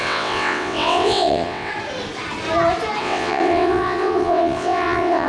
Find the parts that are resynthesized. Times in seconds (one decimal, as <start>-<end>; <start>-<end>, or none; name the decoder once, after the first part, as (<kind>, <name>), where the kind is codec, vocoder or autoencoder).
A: 0.0-1.7 (vocoder, WaveNeXt); 3.0-5.3